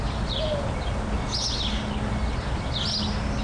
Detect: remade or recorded recorded